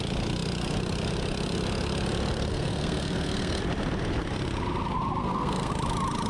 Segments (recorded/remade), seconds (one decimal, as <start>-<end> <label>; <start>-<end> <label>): 0.0-2.5 recorded; 2.5-3.6 remade; 3.6-5.2 recorded; 5.2-5.7 remade; 5.7-6.3 recorded